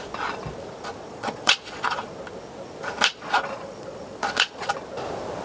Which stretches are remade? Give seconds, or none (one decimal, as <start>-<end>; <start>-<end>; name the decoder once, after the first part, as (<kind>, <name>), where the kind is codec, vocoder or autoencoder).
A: 1.1-2.1 (vocoder, Vocos); 3.1-4.7